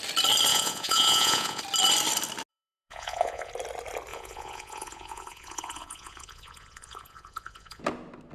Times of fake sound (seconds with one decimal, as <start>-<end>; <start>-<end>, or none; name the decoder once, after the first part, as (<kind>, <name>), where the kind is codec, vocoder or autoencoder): 0.5-1.6 (vocoder, Vocos); 2.5-3.5; 4.1-7.8